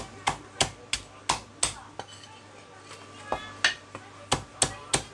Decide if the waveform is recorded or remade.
recorded